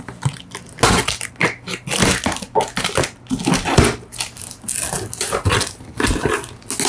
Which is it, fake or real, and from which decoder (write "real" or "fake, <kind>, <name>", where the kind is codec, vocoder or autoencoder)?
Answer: real